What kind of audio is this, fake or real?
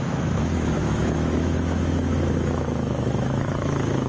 fake